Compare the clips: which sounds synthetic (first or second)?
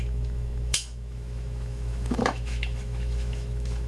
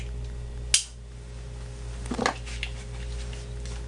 first